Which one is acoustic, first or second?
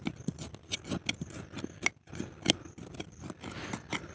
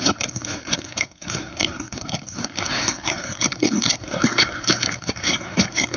first